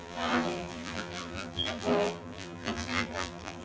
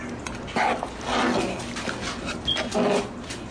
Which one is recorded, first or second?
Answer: second